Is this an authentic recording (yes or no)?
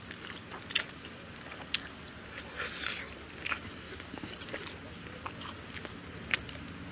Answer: yes